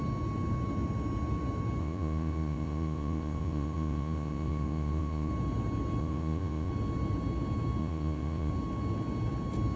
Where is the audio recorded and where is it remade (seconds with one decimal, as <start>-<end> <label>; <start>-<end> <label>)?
0.0-1.8 recorded; 1.8-5.3 remade; 5.3-6.0 recorded; 6.0-6.7 remade; 6.7-7.8 recorded; 7.8-8.5 remade; 8.5-9.8 recorded